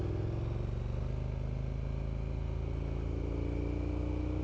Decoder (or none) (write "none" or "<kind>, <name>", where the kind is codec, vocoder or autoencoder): none